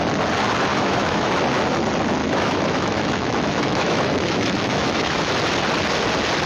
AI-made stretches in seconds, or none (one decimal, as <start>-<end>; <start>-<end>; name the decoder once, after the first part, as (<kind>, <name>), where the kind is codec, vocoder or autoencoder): 0.7-1.3 (autoencoder, DAC-VAE); 2.2-5.3